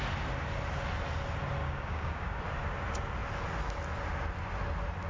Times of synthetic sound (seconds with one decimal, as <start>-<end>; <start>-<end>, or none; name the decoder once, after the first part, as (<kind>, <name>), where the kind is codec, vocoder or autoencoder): 1.6-2.4 (codec, DAC)